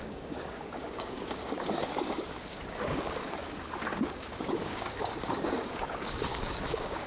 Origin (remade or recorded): remade